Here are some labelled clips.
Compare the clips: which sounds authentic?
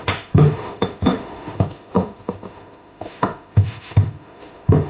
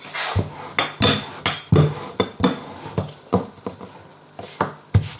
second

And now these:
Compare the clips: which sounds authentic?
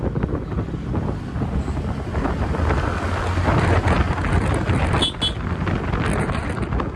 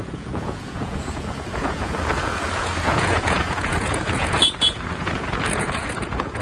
first